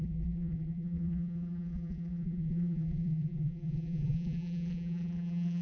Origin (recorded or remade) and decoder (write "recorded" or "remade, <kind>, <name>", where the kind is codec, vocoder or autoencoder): remade, vocoder, BigVGAN v2